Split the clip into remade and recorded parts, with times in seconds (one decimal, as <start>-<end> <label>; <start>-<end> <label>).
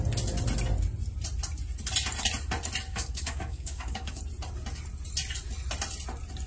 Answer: 0.0-2.9 recorded; 2.9-4.2 remade; 4.2-6.5 recorded